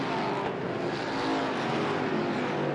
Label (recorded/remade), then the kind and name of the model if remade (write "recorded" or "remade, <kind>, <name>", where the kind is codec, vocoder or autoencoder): recorded